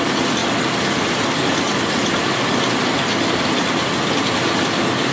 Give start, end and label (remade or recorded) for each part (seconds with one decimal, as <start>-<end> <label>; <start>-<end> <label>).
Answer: 0.0-5.1 recorded